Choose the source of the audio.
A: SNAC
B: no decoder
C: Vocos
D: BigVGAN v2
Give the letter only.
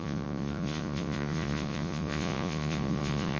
C